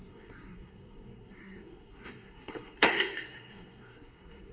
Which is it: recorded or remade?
remade